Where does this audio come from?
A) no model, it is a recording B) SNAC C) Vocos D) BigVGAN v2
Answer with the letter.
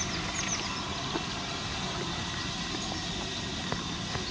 A